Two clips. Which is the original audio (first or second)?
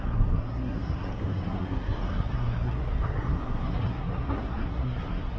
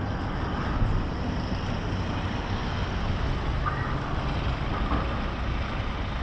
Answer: second